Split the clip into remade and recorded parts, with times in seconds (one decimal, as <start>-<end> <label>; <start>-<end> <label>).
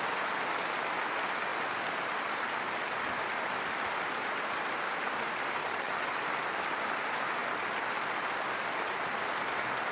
0.0-5.6 recorded; 5.6-6.2 remade; 6.2-9.9 recorded